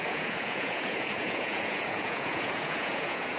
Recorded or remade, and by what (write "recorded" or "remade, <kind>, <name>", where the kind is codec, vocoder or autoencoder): remade, vocoder, Vocos